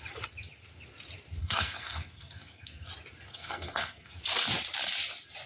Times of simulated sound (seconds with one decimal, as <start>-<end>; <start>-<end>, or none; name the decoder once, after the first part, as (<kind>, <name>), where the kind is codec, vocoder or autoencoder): 1.4-2.9 (codec, SNAC); 3.3-4.2